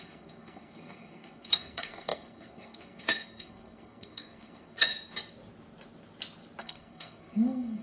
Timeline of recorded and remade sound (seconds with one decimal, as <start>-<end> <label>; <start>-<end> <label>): 0.0-4.9 remade; 4.9-6.6 recorded; 6.6-7.8 remade